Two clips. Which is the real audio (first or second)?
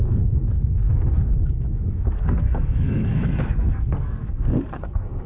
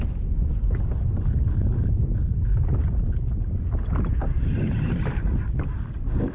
second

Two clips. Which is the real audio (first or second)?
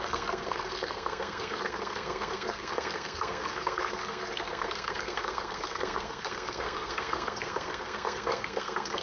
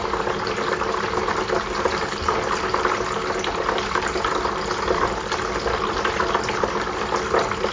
second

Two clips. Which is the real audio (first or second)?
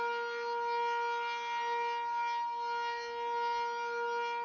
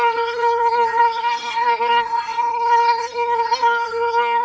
first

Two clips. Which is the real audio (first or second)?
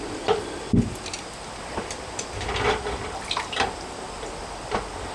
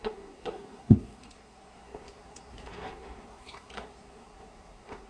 first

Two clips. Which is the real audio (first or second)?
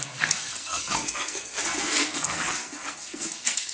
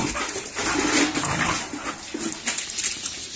second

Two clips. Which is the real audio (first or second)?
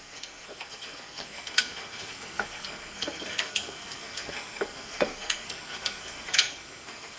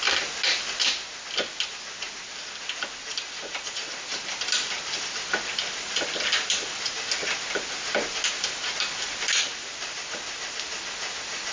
second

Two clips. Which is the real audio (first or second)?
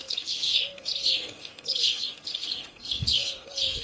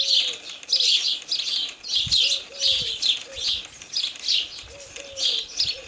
second